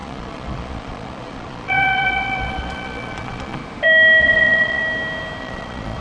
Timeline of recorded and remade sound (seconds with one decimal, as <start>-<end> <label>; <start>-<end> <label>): 0.0-3.6 remade; 3.6-4.2 recorded; 4.2-4.8 remade; 4.8-5.4 recorded; 5.4-6.0 remade